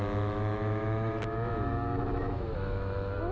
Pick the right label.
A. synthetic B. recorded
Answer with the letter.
A